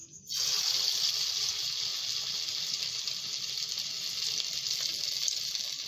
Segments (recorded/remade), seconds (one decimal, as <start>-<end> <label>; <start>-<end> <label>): 0.0-5.9 recorded